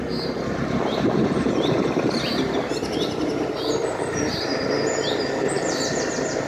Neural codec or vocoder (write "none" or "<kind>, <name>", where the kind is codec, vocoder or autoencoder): vocoder, BigVGAN v2